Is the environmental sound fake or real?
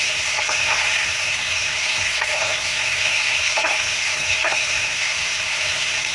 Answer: fake